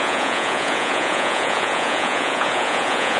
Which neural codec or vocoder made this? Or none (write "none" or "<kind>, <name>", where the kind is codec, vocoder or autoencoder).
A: vocoder, Vocos